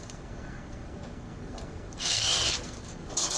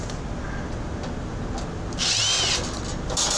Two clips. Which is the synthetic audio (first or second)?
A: first